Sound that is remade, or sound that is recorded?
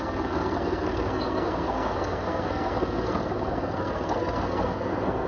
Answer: remade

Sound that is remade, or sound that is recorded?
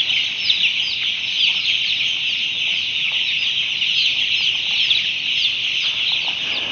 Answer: recorded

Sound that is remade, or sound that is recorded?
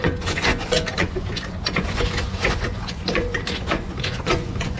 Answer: remade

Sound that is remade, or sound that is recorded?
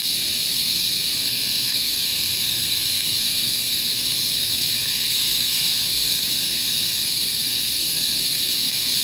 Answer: remade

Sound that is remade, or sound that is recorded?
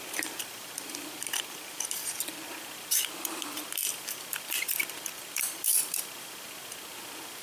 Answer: remade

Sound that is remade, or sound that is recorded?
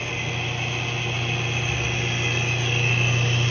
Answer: recorded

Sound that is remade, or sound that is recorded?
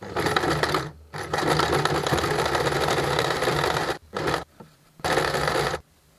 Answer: recorded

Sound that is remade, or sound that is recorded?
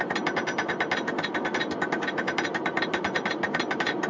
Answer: recorded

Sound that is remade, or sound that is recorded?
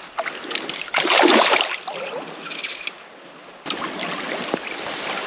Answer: recorded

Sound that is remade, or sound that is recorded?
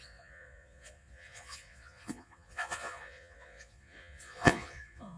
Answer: remade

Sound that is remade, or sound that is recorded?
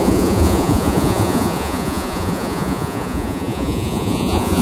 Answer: remade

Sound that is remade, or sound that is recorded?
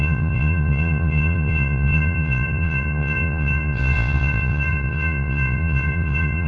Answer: remade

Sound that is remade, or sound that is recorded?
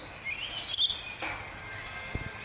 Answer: recorded